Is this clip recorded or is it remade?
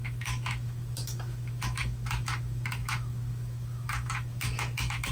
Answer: remade